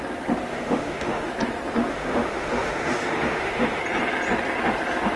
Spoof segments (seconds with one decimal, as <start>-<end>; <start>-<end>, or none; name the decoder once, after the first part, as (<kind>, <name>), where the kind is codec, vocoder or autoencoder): 0.5-1.3 (autoencoder, DAC-VAE); 1.9-3.8